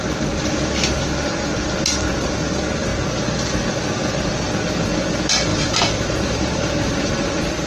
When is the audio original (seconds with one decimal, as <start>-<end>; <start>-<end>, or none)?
0.0-5.5; 7.1-7.7